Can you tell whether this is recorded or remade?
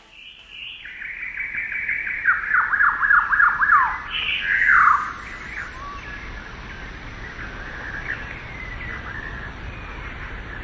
recorded